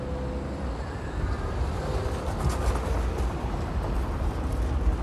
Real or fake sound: real